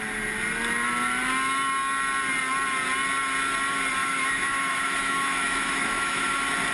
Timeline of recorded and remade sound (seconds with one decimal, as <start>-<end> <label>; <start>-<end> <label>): 0.0-4.0 recorded; 4.0-6.3 remade; 6.3-6.7 recorded